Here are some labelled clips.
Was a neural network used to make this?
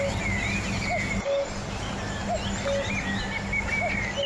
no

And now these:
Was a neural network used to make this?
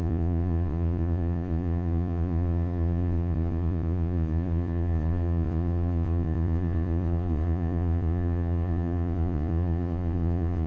yes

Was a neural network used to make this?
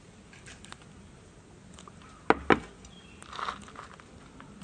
no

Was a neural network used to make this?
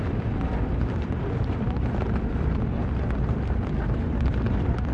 no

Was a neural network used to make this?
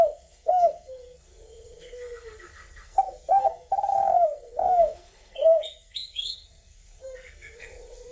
yes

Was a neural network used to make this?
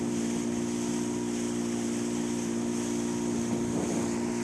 no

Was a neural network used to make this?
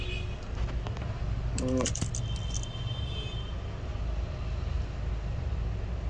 no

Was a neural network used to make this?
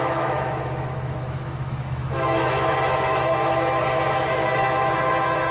yes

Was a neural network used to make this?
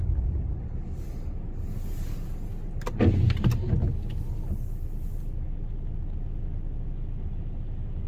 no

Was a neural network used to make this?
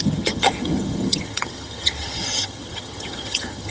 yes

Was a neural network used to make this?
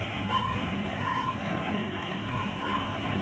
yes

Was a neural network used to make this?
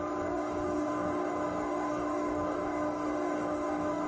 yes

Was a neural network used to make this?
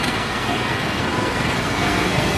yes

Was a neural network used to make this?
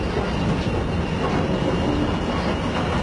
no